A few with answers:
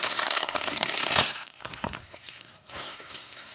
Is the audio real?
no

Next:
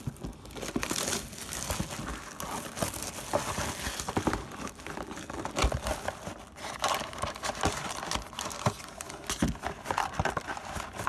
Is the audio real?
yes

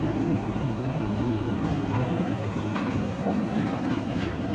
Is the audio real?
no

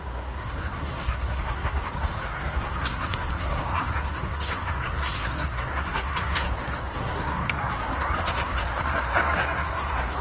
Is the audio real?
no